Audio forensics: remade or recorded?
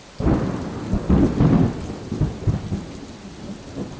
recorded